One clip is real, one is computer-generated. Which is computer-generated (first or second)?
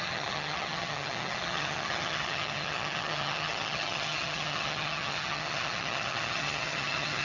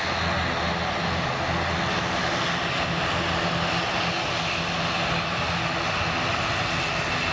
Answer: first